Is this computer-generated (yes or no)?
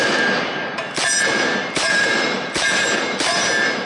yes